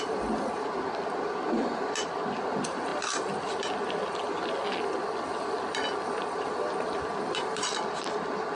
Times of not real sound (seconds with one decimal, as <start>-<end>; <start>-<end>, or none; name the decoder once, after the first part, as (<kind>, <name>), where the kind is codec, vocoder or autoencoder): none